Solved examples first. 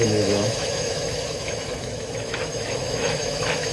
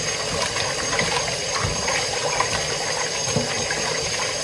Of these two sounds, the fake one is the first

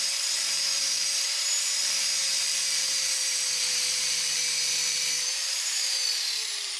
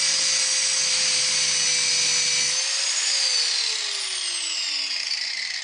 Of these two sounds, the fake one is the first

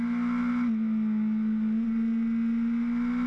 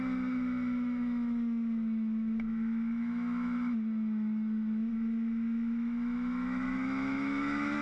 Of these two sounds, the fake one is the second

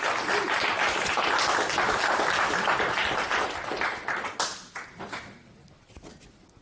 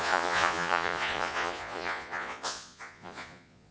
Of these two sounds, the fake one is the second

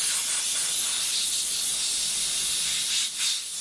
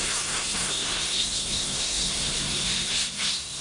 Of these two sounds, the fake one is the second